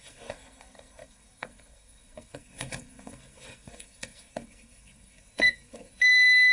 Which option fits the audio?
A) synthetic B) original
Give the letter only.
A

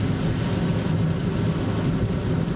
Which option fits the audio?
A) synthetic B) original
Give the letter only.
B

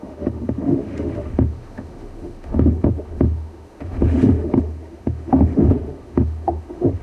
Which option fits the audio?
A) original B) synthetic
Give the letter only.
B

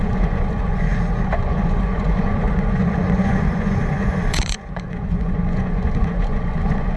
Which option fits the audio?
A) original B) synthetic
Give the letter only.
B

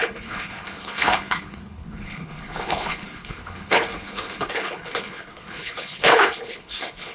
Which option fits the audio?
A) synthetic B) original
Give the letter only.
A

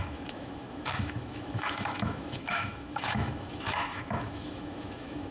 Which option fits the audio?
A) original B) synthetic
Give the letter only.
B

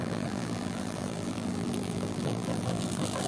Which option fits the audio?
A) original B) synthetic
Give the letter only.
B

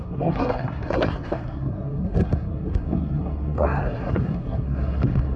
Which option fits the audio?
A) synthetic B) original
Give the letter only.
A